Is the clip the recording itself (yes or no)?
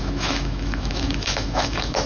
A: no